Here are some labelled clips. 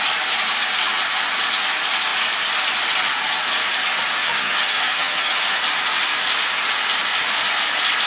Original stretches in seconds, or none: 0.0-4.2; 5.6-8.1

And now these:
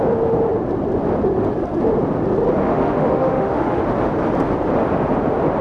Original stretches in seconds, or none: 0.0-2.6; 3.8-5.6

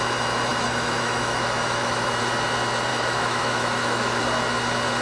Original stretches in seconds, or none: 0.0-0.5; 2.2-2.9; 4.2-5.0

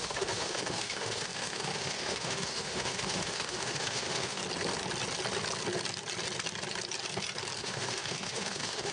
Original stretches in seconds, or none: 4.4-7.6

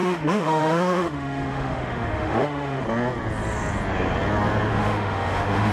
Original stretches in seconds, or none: 2.8-4.7

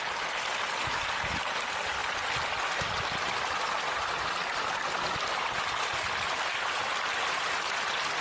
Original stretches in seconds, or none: 0.0-8.2

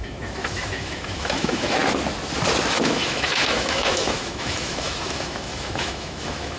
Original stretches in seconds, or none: 1.8-2.7